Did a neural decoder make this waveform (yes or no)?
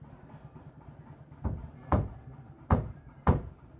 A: yes